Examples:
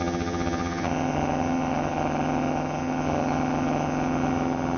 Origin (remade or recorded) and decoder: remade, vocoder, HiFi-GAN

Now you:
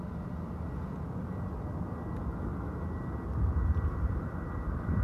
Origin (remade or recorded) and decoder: recorded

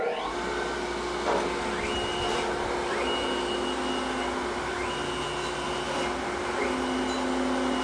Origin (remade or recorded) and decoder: recorded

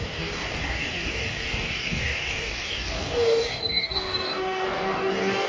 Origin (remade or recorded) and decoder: remade, codec, DAC